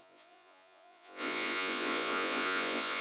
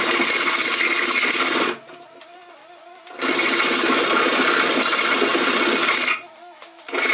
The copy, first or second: first